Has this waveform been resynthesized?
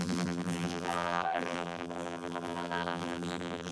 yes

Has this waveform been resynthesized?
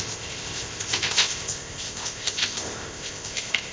yes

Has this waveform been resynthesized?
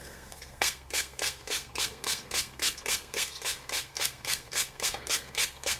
yes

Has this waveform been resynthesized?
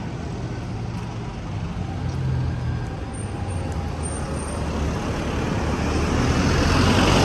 no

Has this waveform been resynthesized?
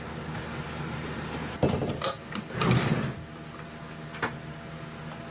no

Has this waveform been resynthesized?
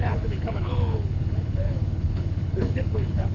yes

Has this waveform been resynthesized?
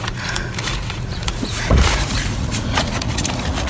yes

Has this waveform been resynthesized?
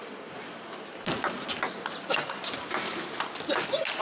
no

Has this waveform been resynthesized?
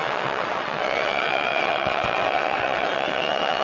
yes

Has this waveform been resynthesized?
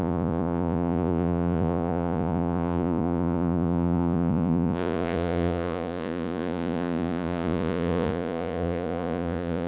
yes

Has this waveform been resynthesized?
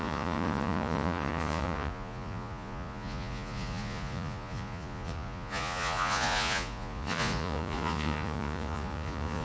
yes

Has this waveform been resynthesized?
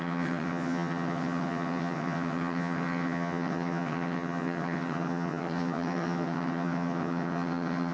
yes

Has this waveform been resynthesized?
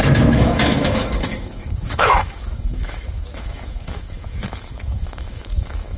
yes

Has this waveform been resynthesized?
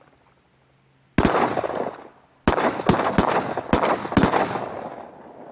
no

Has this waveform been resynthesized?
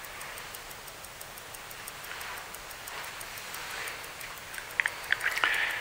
no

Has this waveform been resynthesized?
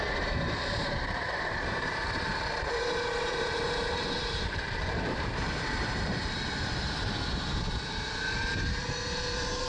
yes